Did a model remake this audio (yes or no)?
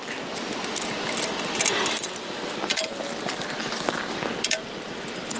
no